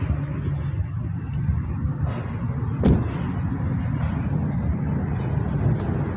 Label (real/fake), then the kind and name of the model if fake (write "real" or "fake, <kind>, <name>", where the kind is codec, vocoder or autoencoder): real